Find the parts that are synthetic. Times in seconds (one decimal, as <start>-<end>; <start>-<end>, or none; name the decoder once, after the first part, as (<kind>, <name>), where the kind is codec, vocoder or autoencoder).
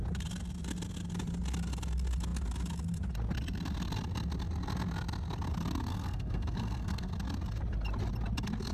5.9-7.1 (codec, SNAC)